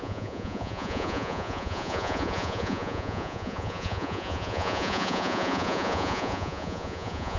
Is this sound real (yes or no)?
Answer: no